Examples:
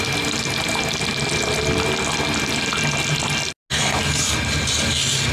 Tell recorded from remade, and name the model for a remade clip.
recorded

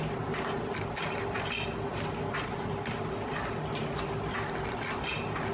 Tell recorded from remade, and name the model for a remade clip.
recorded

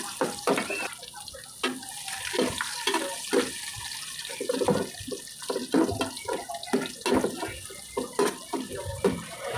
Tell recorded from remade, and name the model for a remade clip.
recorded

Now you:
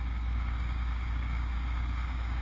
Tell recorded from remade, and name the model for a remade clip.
remade, codec, DAC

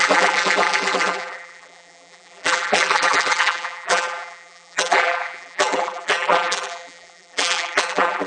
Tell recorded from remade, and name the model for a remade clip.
remade, vocoder, BigVGAN v2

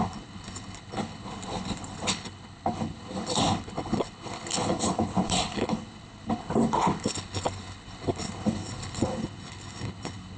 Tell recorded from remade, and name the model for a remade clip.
remade, codec, HILCodec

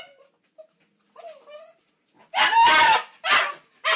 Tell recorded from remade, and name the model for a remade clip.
recorded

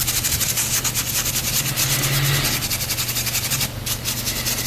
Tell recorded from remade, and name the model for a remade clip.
recorded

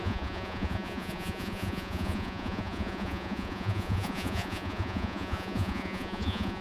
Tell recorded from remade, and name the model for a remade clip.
remade, vocoder, Vocos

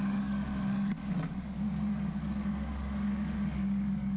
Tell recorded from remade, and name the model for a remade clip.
remade, codec, DAC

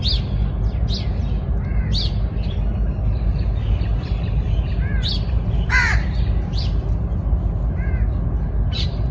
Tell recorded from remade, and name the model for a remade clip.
recorded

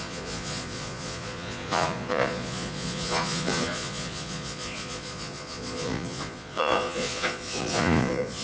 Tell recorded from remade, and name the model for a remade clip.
remade, vocoder, Vocos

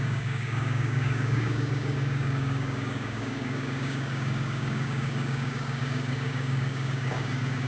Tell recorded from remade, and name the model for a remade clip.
remade, codec, DAC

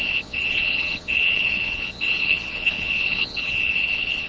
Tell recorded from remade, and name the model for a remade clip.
remade, vocoder, Vocos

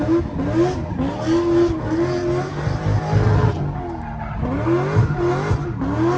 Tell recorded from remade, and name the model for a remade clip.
recorded